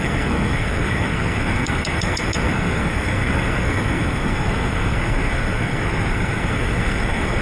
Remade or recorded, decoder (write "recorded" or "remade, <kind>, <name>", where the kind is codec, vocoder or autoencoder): remade, codec, SNAC